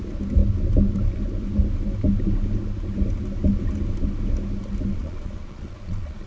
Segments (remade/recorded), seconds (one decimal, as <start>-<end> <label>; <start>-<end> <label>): 0.0-4.9 recorded; 4.9-6.3 remade